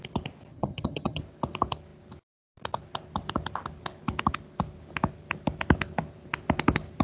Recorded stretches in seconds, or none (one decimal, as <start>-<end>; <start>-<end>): 0.0-0.5; 1.2-7.0